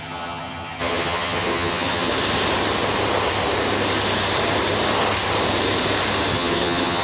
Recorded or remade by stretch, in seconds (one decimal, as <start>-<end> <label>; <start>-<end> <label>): 0.0-2.1 remade; 2.1-6.3 recorded; 6.3-7.0 remade